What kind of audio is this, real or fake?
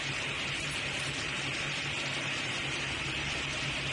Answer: fake